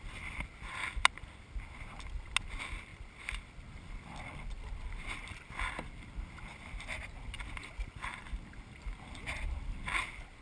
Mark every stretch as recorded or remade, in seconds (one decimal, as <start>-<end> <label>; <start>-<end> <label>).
0.0-10.4 recorded